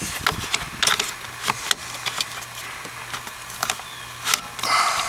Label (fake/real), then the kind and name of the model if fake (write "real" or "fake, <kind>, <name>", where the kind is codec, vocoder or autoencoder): real